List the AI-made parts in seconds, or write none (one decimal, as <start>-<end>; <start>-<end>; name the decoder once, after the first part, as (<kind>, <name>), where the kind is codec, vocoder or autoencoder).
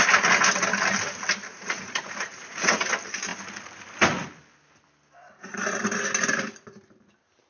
1.5-2.9 (vocoder, Vocos)